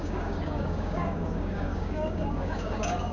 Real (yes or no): no